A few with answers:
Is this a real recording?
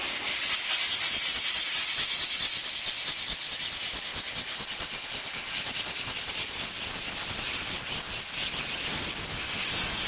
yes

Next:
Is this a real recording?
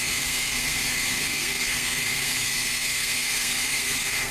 no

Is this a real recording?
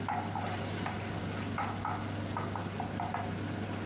yes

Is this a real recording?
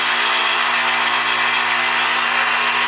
yes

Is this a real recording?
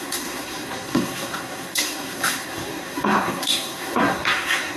no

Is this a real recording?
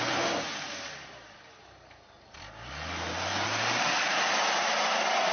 yes